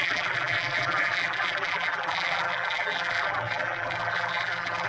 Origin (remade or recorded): remade